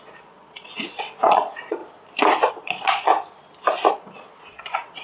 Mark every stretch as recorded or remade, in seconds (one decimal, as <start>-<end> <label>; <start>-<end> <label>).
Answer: 0.0-1.8 remade; 1.8-2.5 recorded; 2.5-3.1 remade; 3.1-3.9 recorded; 3.9-5.0 remade